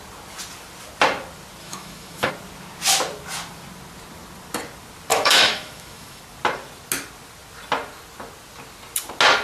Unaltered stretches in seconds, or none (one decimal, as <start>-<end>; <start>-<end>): 0.0-1.6; 2.3-5.1; 6.2-9.4